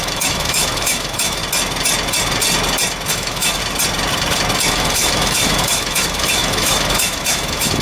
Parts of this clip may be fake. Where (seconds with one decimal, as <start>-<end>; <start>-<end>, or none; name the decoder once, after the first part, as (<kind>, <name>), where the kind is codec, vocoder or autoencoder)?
0.0-1.4 (autoencoder, DAC-VAE); 3.1-3.6; 4.7-7.8